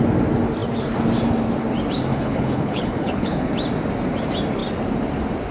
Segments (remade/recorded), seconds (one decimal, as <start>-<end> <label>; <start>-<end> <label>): 0.0-2.1 recorded; 2.1-3.5 remade; 3.5-5.5 recorded